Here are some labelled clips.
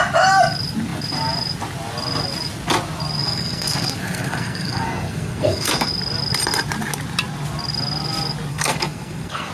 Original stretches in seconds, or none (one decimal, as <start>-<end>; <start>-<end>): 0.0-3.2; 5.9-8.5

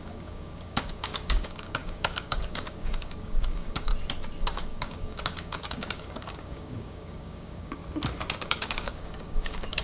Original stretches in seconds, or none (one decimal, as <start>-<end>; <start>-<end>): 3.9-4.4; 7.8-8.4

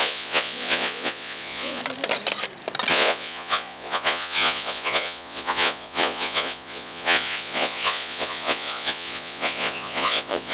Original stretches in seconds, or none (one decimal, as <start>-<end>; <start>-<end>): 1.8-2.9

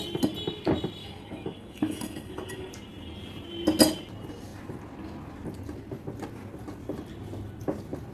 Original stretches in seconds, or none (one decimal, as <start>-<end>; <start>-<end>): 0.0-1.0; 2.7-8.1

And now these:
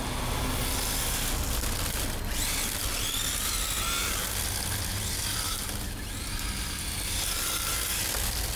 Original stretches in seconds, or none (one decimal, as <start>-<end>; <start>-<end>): 0.0-8.6

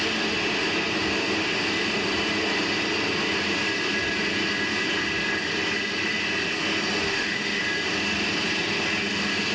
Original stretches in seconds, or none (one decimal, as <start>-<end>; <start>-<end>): 0.0-7.1; 7.6-9.5